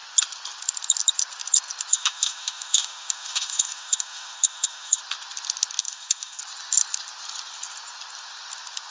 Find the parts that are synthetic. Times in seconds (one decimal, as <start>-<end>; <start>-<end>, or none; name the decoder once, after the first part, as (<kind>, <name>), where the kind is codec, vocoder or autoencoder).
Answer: 1.9-5.0 (autoencoder, DAC-VAE); 5.8-6.4